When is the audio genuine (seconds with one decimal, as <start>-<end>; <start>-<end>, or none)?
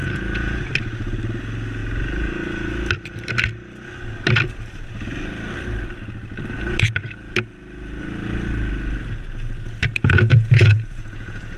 0.6-10.3